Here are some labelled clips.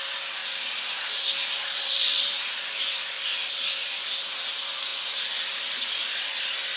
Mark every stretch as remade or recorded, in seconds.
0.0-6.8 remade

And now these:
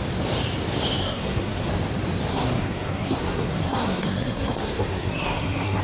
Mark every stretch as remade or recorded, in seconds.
0.0-1.0 recorded; 1.0-1.7 remade; 1.7-2.3 recorded; 2.3-5.8 remade

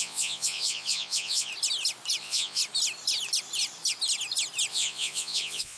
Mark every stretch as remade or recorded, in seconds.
0.0-1.5 remade; 1.5-2.2 recorded; 2.2-2.6 remade; 2.6-4.7 recorded; 4.7-5.8 remade

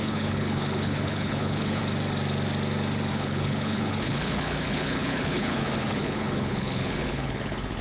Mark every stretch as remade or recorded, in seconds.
0.0-1.8 remade; 1.8-3.1 recorded; 3.1-7.8 remade

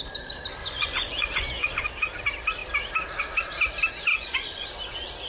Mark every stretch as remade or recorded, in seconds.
0.0-0.6 recorded; 0.6-1.9 remade; 1.9-4.1 recorded; 4.1-4.7 remade; 4.7-5.3 recorded

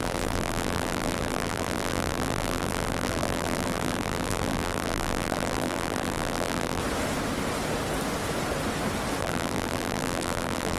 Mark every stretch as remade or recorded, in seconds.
0.0-6.8 remade; 6.8-9.2 recorded; 9.2-10.8 remade

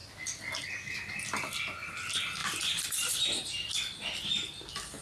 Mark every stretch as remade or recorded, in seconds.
0.0-2.4 recorded; 2.4-3.7 remade; 3.7-5.0 recorded